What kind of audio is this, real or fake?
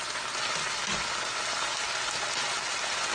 real